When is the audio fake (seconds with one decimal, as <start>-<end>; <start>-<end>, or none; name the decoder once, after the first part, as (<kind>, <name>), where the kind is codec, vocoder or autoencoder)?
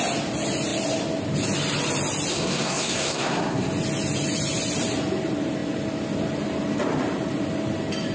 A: 2.3-3.7 (codec, SNAC)